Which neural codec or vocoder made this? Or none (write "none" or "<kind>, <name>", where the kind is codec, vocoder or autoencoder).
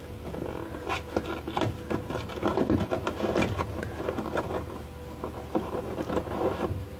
none